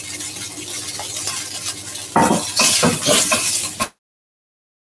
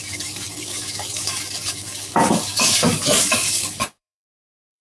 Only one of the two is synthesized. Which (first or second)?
second